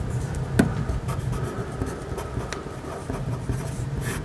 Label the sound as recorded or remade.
recorded